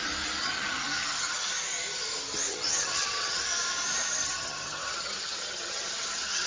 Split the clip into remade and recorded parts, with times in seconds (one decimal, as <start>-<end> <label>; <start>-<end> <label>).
0.0-0.4 recorded; 0.4-1.5 remade; 1.5-2.5 recorded; 2.5-3.4 remade; 3.4-4.2 recorded; 4.2-6.5 remade